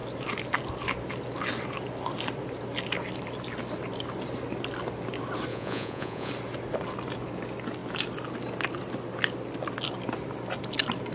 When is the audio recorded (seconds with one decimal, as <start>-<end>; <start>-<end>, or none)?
0.0-5.5; 6.3-11.1